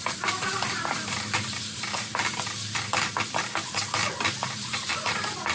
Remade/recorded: recorded